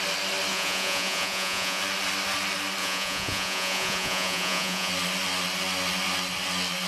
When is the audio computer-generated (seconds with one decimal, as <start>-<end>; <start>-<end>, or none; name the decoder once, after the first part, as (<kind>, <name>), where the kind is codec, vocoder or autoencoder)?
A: 0.5-1.8 (vocoder, Vocos); 2.8-4.9